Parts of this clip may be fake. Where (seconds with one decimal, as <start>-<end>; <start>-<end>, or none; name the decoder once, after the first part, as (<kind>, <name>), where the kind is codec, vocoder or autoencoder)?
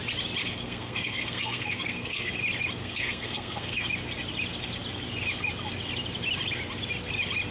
0.4-2.3 (codec, SNAC); 2.8-3.9